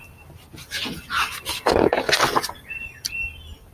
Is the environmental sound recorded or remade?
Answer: recorded